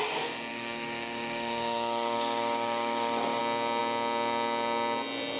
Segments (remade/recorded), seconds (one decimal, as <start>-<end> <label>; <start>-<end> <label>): 0.0-0.5 recorded; 0.5-3.4 remade; 3.4-5.4 recorded